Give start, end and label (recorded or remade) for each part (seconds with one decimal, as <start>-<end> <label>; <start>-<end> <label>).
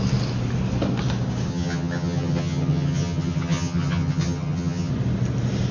0.0-1.5 recorded; 1.5-4.9 remade; 4.9-5.7 recorded